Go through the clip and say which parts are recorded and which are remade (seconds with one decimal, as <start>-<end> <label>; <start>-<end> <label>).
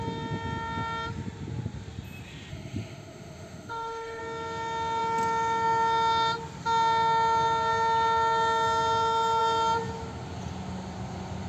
0.0-2.5 recorded; 2.5-4.2 remade; 4.2-11.5 recorded